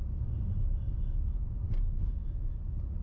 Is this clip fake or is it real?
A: real